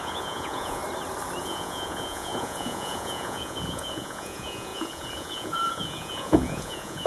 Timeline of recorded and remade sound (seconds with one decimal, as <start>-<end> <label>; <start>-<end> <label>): 0.0-0.8 remade; 0.8-1.4 recorded; 1.4-7.1 remade